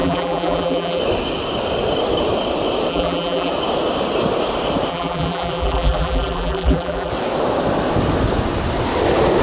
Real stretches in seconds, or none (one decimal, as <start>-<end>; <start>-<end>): 1.0-2.9; 3.5-4.9; 7.1-9.4